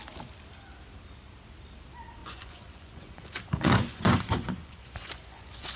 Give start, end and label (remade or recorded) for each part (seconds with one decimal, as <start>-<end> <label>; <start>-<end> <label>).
0.0-2.2 recorded; 2.2-5.8 remade